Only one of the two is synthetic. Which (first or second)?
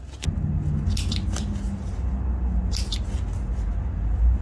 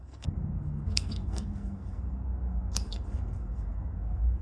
second